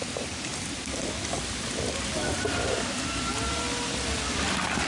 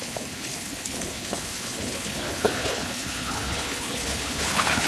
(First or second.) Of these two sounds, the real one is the first